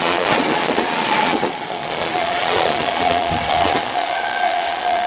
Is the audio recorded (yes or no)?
no